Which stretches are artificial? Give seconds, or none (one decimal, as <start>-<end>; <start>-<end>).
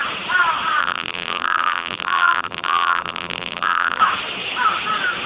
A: 0.8-4.0